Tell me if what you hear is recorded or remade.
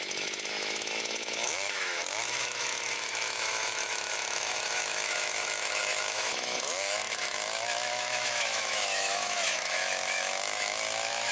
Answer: remade